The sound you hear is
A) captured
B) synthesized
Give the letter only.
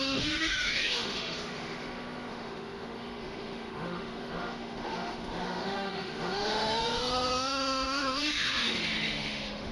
B